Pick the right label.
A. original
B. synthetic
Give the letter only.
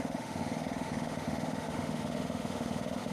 B